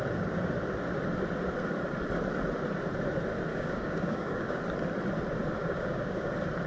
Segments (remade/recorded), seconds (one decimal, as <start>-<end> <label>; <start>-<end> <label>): 0.0-3.5 recorded; 3.5-4.6 remade; 4.6-5.6 recorded; 5.6-6.3 remade; 6.3-6.7 recorded